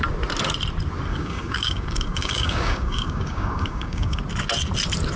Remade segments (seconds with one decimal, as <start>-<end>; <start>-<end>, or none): 1.1-4.2